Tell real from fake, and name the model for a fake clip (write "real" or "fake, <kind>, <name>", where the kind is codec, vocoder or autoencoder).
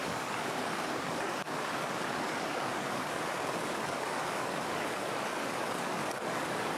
fake, codec, DAC